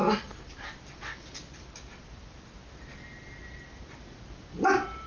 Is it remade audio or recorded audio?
recorded